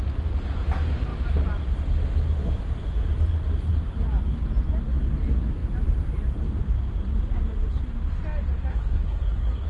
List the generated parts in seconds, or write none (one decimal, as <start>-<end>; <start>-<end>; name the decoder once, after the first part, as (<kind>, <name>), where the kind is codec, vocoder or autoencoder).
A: 8.7-9.7 (codec, SNAC)